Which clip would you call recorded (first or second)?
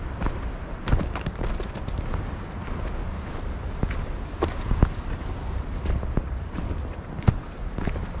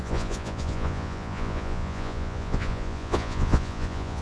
first